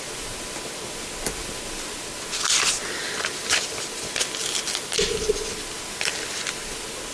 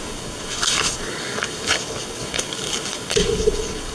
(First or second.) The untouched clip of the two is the first